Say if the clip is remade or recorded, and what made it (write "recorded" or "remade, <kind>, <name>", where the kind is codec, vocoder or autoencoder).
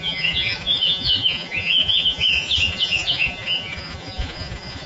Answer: remade, vocoder, Vocos